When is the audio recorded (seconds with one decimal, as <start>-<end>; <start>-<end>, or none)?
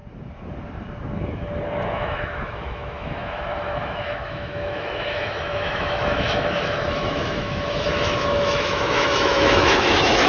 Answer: 0.0-1.9